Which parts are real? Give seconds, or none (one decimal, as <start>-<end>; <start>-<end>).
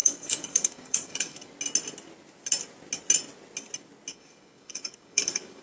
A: 1.5-4.1